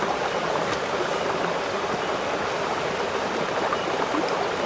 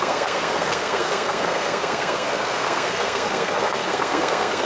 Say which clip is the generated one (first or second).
second